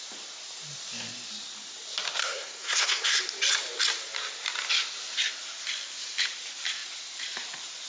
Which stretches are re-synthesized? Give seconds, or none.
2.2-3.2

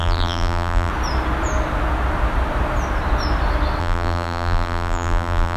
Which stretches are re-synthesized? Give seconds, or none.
0.0-0.9; 3.8-5.6

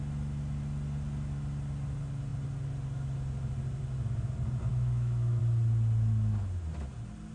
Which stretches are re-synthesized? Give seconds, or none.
4.7-5.4

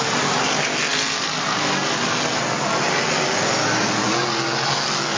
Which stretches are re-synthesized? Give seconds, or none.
none

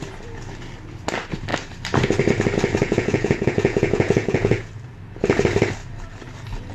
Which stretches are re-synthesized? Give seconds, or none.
2.8-4.7

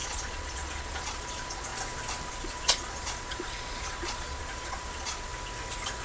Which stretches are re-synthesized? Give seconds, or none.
0.0-1.7; 2.3-5.3